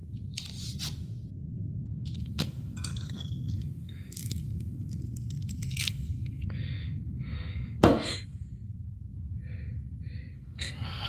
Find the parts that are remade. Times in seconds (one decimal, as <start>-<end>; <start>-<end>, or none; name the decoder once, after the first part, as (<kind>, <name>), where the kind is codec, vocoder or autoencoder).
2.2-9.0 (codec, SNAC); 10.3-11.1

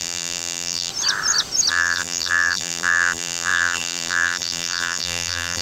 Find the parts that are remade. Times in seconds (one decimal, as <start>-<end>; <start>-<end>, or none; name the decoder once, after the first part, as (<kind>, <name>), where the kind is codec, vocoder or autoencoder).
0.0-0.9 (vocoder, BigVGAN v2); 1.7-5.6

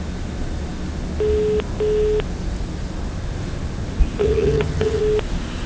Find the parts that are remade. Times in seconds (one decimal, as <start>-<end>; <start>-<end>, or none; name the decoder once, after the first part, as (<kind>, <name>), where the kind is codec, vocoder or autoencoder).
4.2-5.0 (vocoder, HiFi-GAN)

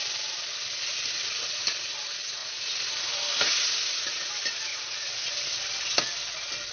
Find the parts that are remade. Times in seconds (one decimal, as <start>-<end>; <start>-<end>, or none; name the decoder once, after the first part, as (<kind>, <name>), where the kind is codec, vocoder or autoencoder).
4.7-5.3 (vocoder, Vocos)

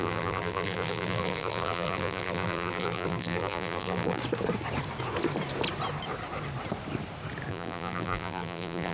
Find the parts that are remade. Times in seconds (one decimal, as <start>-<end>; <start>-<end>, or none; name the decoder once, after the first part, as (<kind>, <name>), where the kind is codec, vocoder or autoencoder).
0.0-4.2 (vocoder, BigVGAN v2); 7.5-8.9